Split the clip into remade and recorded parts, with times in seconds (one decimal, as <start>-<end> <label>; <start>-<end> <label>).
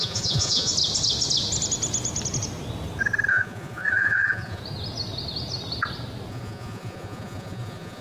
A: 0.0-0.7 remade; 0.7-3.3 recorded; 3.3-4.6 remade; 4.6-6.3 recorded; 6.3-8.0 remade